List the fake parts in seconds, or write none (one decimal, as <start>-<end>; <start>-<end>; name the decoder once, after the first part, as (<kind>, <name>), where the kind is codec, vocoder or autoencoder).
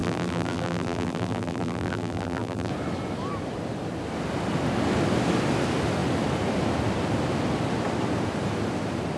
0.0-2.7 (vocoder, BigVGAN v2)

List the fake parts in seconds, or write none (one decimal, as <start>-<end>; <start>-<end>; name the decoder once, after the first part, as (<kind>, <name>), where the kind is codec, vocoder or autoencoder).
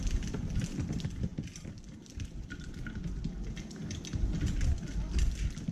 none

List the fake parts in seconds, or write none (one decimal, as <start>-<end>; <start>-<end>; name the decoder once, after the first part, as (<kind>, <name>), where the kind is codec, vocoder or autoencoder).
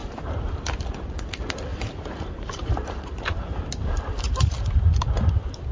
0.0-0.6 (vocoder, BigVGAN v2); 1.7-4.6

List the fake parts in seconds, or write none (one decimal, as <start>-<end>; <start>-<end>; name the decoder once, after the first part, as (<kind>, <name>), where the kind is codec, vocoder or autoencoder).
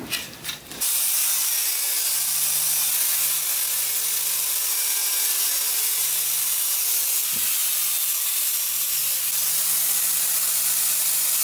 0.0-1.2 (vocoder, BigVGAN v2); 4.5-5.0; 5.7-7.6; 8.2-11.4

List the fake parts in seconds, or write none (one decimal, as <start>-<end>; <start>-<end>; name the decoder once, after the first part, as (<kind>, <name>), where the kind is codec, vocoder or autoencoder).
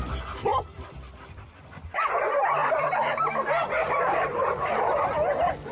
0.5-1.7 (vocoder, BigVGAN v2); 2.6-4.8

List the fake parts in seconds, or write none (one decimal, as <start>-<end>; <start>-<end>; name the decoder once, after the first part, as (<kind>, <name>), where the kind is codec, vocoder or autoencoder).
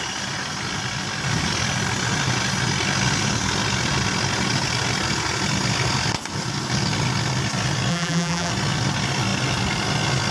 7.9-8.5 (vocoder, BigVGAN v2)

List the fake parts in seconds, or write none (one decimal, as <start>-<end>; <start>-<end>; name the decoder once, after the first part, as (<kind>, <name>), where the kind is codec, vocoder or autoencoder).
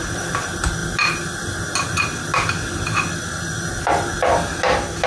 none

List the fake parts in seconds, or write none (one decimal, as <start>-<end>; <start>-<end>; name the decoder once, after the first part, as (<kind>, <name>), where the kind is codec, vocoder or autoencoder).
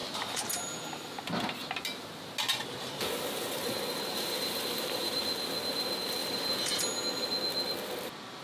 0.0-0.8 (vocoder, BigVGAN v2); 2.6-5.2; 6.2-6.8